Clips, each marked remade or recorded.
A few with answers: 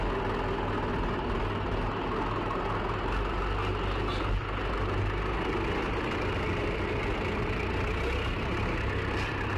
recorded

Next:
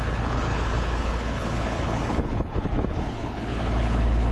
remade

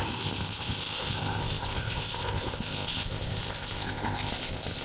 remade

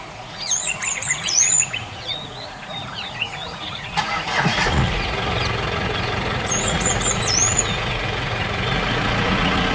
remade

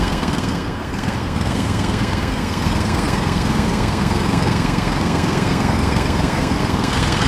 remade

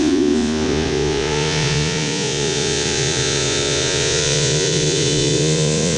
remade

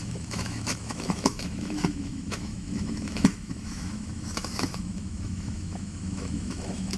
remade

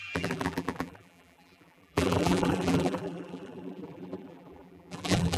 remade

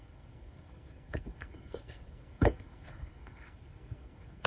remade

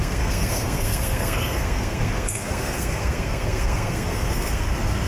remade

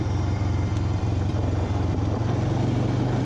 recorded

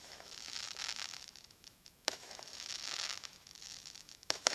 remade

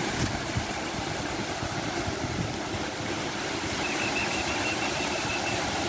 recorded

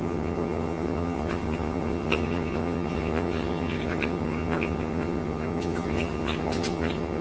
remade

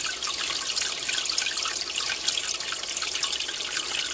remade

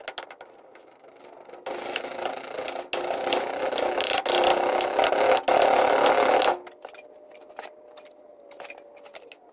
recorded